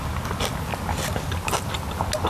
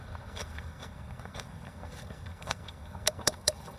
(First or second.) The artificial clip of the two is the second